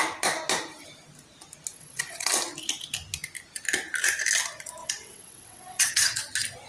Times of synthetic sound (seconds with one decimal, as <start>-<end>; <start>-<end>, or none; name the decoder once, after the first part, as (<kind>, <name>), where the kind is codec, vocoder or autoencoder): 1.7-2.3 (vocoder, WaveNeXt); 4.8-6.2